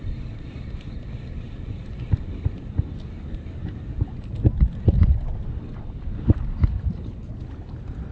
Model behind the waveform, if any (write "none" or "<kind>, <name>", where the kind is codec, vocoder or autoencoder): none